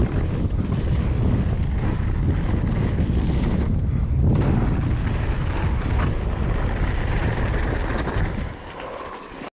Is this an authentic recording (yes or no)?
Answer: yes